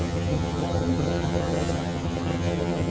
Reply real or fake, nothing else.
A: fake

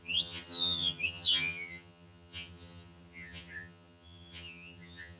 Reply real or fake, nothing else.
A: fake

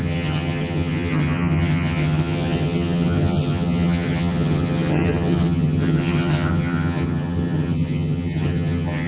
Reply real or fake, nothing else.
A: fake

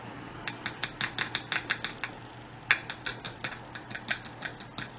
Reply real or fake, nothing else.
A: real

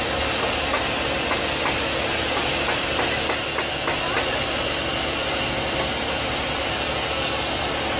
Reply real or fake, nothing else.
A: real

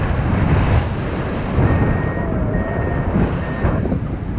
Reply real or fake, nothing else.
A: real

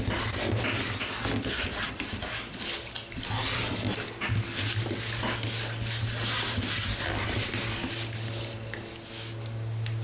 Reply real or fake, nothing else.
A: real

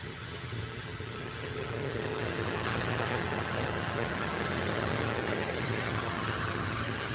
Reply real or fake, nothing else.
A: fake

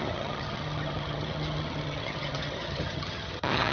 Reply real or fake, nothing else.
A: fake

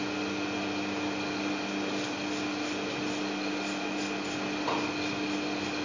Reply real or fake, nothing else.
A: real